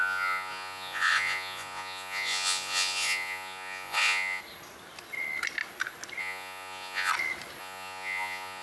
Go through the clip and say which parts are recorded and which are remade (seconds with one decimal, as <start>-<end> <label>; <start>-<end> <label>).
0.0-4.4 remade; 4.4-6.2 recorded; 6.2-7.1 remade; 7.1-7.6 recorded; 7.6-8.6 remade